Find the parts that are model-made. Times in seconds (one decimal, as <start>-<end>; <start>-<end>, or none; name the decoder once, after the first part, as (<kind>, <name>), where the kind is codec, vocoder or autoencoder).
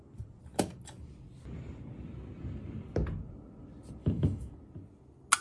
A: 4.0-4.5 (autoencoder, DAC-VAE)